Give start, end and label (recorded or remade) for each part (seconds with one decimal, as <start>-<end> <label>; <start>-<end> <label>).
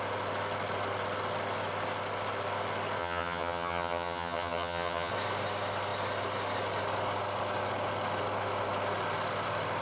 0.0-3.0 recorded; 3.0-5.1 remade; 5.1-9.8 recorded